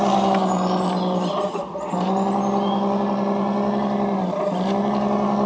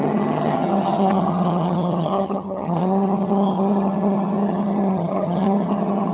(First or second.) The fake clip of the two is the second